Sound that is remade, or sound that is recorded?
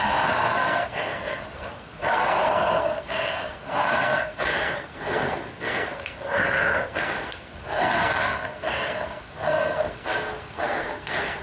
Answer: remade